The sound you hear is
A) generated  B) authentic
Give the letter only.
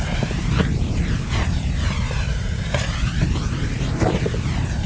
A